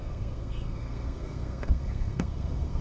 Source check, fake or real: fake